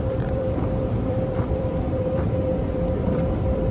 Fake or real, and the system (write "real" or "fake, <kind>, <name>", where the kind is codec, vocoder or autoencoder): fake, vocoder, BigVGAN v2